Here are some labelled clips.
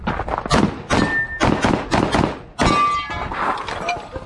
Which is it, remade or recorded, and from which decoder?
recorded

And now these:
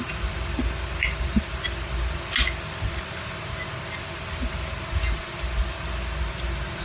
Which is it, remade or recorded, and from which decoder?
recorded